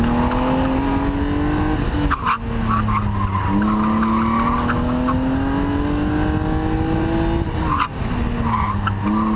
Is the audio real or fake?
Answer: real